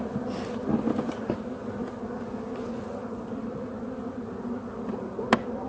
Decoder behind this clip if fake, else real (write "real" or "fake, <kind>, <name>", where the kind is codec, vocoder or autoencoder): real